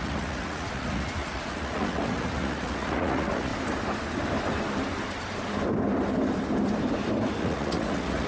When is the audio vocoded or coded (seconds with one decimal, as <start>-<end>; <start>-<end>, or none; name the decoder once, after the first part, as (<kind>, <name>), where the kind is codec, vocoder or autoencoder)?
0.0-3.5 (vocoder, Vocos); 7.4-8.3